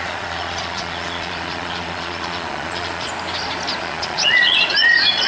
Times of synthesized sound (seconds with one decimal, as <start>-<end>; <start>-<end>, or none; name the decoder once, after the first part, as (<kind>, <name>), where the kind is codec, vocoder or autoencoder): 0.0-3.1 (vocoder, Vocos); 3.8-5.3